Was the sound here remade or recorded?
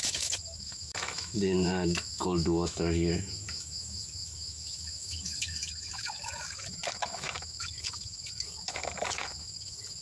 remade